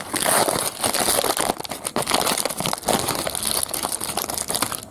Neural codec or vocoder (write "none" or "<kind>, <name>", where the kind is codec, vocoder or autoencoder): none